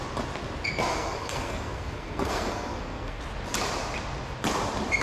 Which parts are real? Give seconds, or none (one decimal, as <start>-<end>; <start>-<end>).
0.0-0.9; 3.2-5.0